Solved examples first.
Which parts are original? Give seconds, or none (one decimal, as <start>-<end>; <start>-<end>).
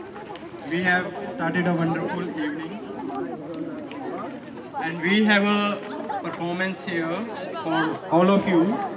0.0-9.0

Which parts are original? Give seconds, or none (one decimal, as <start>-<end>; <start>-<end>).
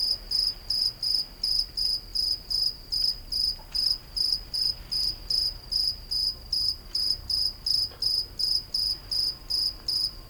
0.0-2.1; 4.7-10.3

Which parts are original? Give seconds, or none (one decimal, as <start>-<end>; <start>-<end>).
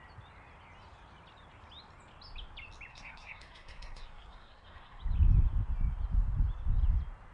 0.0-2.9; 5.0-7.3